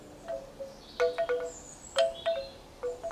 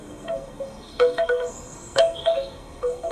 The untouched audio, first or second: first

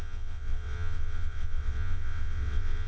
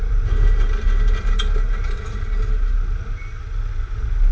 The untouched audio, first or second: second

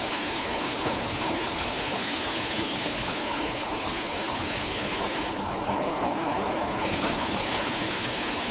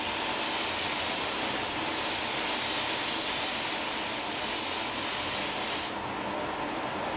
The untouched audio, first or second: second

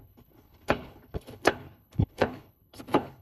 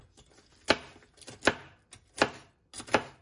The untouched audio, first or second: second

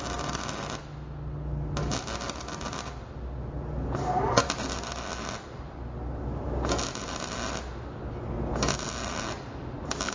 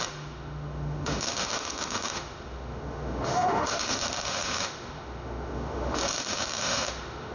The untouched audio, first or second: first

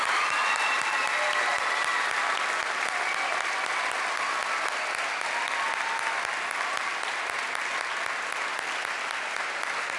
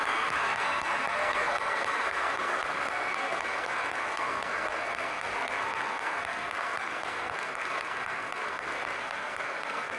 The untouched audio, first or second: first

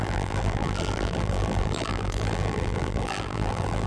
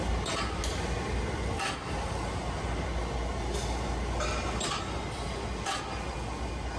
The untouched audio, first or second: second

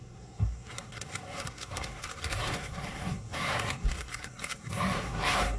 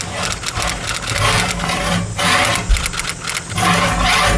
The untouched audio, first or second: second